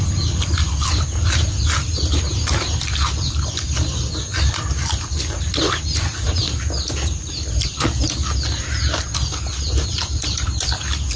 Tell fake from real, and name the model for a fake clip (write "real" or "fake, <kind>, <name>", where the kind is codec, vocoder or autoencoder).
real